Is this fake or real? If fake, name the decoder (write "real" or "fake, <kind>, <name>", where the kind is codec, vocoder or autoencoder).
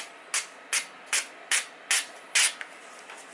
real